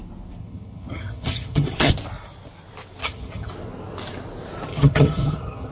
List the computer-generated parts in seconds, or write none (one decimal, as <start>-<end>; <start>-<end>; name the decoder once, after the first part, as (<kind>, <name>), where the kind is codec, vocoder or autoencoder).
0.4-1.9 (vocoder, HiFi-GAN); 3.0-3.5; 4.7-5.7